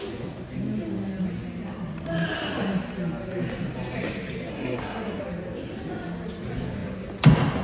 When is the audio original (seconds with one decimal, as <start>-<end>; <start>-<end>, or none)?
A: 0.0-4.5; 5.2-7.6